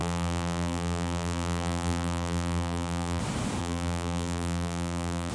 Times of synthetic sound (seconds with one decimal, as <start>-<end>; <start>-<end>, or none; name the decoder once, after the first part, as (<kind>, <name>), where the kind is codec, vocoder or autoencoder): 0.0-3.2 (vocoder, BigVGAN v2); 3.6-5.3